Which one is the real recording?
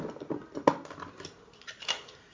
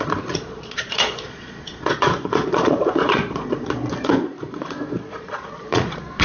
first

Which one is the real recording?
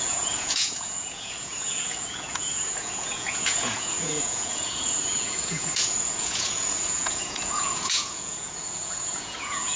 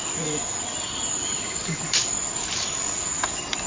second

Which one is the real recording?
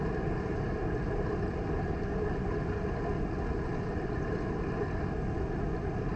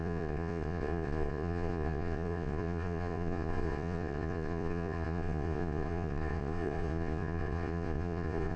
first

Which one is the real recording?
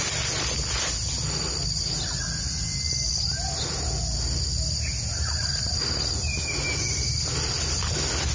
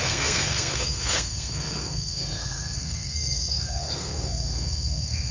first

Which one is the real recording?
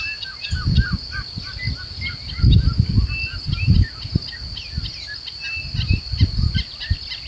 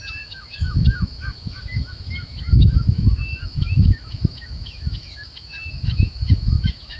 first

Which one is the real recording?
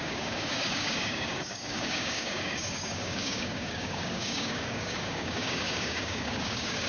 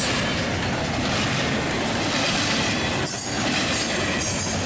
second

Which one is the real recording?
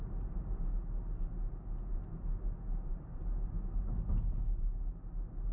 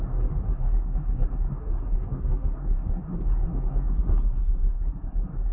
first